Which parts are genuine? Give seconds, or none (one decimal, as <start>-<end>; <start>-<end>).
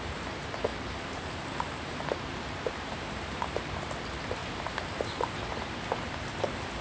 0.0-0.7; 3.6-4.4; 5.4-6.8